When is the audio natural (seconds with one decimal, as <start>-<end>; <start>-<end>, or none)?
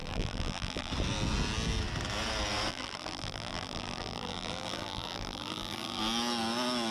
0.9-2.7; 6.0-6.9